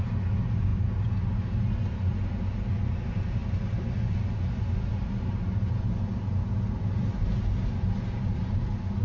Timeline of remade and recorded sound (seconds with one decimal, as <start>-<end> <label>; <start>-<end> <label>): 0.0-9.0 recorded